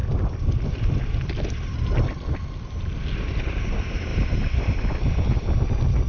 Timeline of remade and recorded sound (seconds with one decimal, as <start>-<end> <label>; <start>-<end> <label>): 0.0-4.1 recorded; 4.1-4.6 remade; 4.6-6.1 recorded